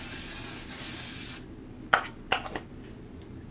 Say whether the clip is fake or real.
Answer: real